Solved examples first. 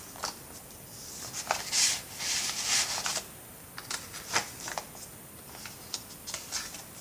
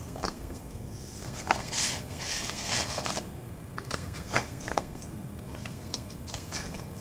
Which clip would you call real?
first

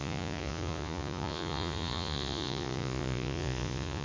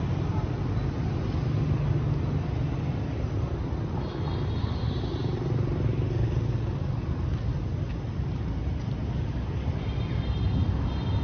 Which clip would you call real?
second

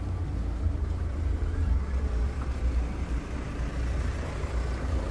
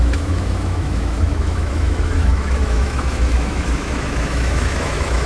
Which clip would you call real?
first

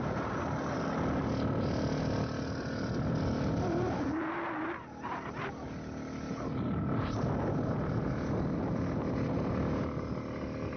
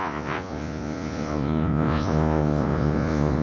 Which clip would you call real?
first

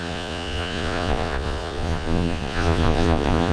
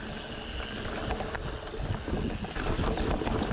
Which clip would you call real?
second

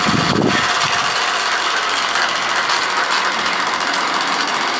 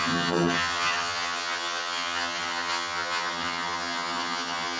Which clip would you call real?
first